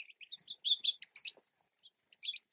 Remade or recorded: recorded